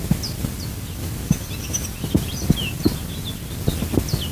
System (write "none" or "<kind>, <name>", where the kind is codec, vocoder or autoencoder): none